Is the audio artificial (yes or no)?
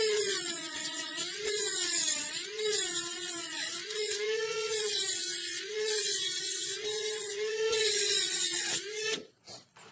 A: yes